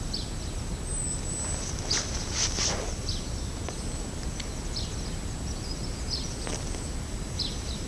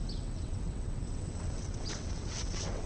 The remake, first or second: second